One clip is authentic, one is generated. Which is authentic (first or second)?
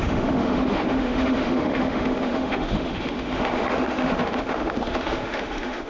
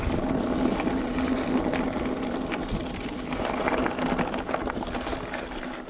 second